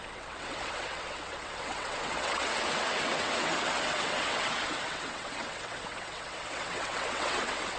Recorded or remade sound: remade